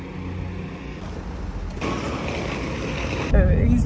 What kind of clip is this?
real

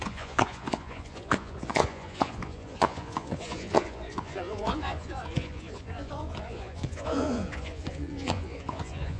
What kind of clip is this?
fake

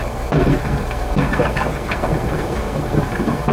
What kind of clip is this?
fake